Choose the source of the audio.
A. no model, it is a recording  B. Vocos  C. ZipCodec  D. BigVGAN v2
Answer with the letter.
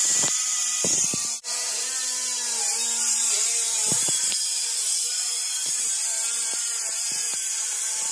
D